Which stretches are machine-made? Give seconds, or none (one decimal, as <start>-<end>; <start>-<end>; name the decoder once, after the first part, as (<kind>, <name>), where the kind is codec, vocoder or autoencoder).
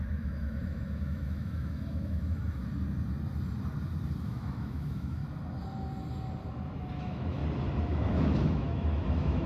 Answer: 0.0-2.6 (autoencoder, DAC-VAE); 4.2-5.2; 7.0-7.4; 7.9-9.5